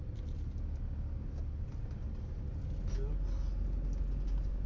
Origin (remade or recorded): recorded